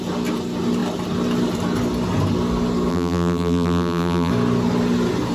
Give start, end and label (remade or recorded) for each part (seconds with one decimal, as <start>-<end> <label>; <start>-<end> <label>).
0.0-2.9 recorded; 2.9-4.3 remade; 4.3-5.3 recorded